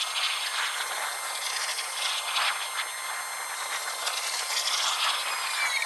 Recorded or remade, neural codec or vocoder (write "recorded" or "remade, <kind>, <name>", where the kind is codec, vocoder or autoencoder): recorded